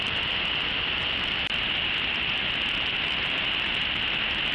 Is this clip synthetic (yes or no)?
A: no